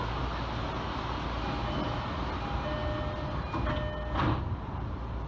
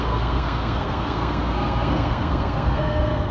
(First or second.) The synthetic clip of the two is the second